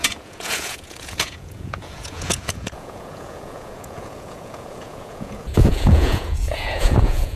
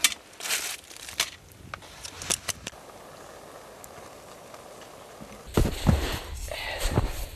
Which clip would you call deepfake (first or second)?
first